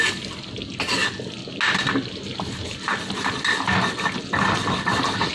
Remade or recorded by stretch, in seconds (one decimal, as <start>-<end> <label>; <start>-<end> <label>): 0.0-5.3 recorded